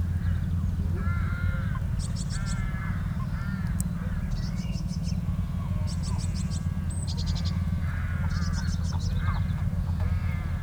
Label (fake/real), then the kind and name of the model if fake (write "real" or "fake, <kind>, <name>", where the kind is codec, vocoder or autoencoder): real